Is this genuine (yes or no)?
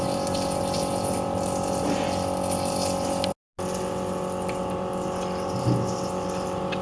yes